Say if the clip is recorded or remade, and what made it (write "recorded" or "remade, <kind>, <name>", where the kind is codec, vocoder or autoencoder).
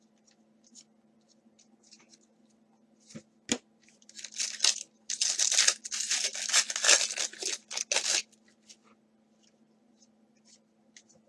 recorded